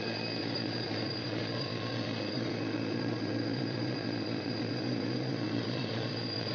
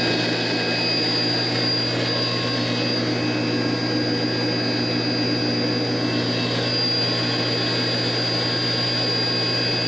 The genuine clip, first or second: second